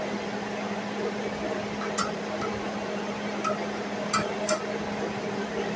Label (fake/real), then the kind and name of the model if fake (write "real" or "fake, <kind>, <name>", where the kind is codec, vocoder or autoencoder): real